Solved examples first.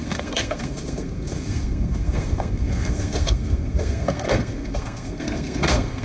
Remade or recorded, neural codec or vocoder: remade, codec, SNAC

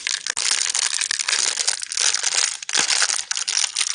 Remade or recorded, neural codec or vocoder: recorded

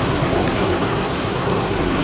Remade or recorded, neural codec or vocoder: remade, codec, SNAC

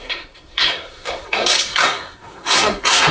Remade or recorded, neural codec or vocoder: remade, codec, SNAC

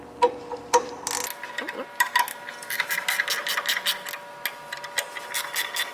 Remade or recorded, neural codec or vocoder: recorded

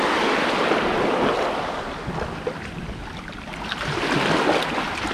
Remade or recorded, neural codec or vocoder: recorded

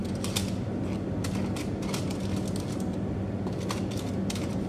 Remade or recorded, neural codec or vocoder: recorded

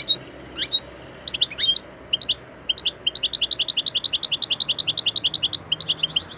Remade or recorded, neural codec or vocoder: recorded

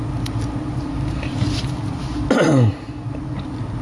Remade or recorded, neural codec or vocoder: recorded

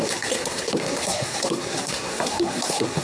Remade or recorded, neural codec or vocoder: remade, codec, SNAC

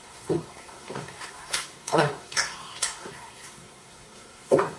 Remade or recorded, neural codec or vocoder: remade, codec, SNAC